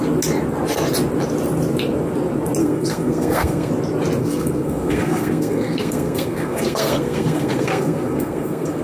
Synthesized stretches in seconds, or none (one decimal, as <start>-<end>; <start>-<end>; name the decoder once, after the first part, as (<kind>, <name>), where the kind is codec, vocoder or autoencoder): 2.6-3.7 (codec, SNAC); 4.2-8.8

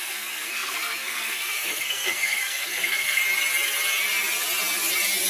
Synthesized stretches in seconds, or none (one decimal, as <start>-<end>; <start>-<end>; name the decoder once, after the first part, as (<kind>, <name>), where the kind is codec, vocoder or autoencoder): 0.0-3.2 (codec, SNAC)

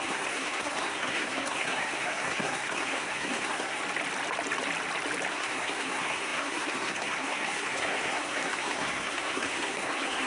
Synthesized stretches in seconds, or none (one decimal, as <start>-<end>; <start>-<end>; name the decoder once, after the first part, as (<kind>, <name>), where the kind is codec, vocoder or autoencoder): 0.0-3.8 (codec, SNAC); 5.3-10.3

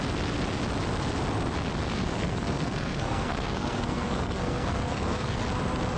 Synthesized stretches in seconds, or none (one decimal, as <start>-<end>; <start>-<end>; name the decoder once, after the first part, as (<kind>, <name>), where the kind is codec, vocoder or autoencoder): 1.8-5.4 (codec, SNAC)

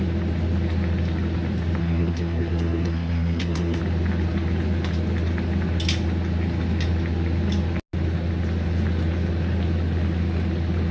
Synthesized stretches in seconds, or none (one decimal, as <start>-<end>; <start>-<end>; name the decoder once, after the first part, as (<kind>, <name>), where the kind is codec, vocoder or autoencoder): 1.8-3.8 (codec, SNAC)